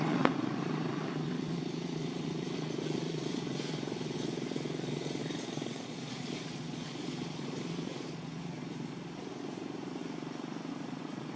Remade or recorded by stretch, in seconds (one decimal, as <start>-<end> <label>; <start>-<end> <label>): 0.0-10.0 remade; 10.0-10.7 recorded; 10.7-11.4 remade